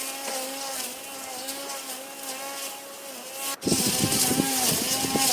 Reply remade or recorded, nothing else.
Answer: recorded